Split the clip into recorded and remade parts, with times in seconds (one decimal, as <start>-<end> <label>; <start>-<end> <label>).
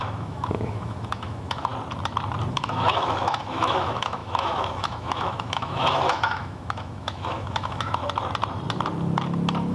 0.0-1.7 remade; 1.7-2.5 recorded; 2.5-8.0 remade; 8.0-9.7 recorded